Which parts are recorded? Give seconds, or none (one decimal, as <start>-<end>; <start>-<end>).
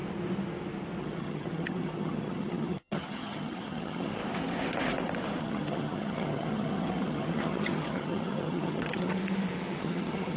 0.0-1.0; 4.2-5.4; 9.2-9.8